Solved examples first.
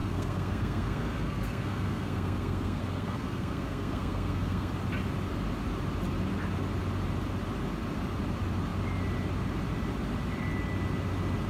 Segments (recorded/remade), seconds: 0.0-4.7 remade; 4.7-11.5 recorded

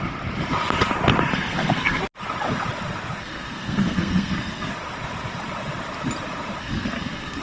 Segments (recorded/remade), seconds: 0.0-1.3 recorded; 1.3-2.0 remade; 2.0-3.2 recorded; 3.2-4.7 remade; 4.7-6.6 recorded; 6.6-7.4 remade

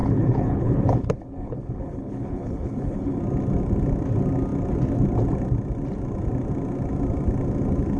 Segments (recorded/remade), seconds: 0.0-3.2 remade; 3.2-8.0 recorded

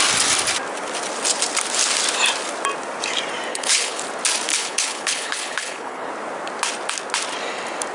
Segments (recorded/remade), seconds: 0.0-3.5 recorded; 3.5-4.0 remade; 4.0-4.5 recorded; 4.5-6.1 remade; 6.1-7.9 recorded

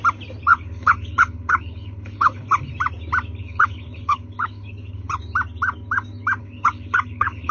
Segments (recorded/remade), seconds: 0.0-0.5 recorded; 0.5-2.7 remade; 2.7-3.4 recorded; 3.4-5.2 remade; 5.2-6.4 recorded; 6.4-7.5 remade